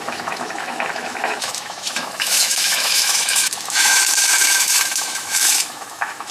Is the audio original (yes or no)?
no